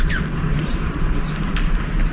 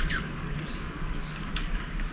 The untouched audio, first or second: first